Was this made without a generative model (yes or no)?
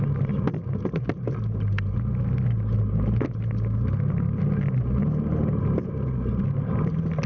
yes